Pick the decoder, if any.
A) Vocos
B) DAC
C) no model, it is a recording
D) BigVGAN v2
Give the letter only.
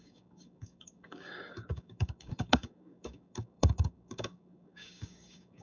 B